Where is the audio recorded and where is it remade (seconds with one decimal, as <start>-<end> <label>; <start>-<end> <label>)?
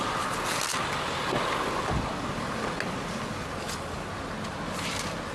0.0-5.3 recorded